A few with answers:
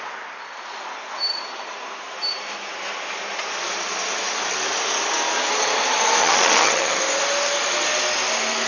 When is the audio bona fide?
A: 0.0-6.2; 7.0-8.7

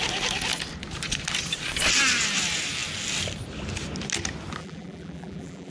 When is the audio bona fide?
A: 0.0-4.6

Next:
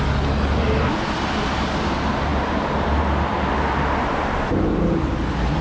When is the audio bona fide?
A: 0.0-5.6